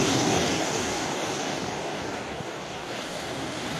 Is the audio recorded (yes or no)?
no